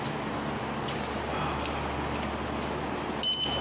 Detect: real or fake real